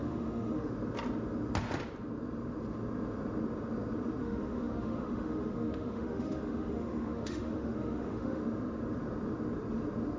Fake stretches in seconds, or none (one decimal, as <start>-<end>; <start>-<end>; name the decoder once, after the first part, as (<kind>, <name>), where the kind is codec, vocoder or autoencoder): 0.0-0.7 (autoencoder, DAC-VAE); 4.2-8.4